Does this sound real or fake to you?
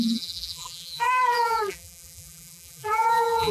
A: fake